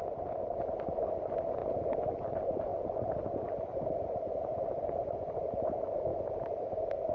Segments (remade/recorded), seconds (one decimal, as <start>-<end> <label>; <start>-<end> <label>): 0.0-6.1 recorded; 6.1-7.1 remade